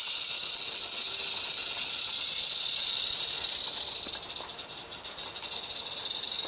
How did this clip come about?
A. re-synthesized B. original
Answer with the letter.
B